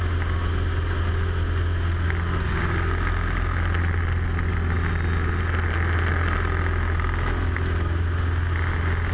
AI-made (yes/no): no